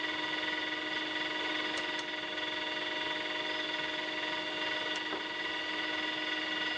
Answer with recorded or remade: recorded